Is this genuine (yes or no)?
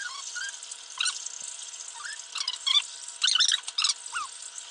yes